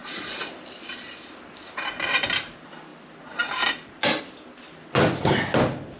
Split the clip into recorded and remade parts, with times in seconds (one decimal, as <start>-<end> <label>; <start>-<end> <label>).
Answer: 0.0-1.1 remade; 1.1-6.0 recorded